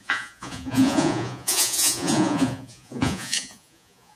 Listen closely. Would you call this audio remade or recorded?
remade